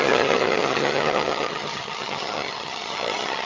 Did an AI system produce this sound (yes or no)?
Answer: yes